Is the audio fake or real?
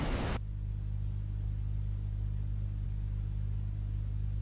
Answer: real